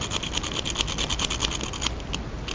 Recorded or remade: recorded